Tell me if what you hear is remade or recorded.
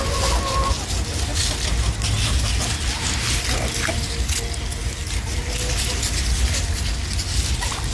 recorded